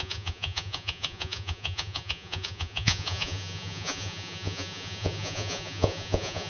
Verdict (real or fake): fake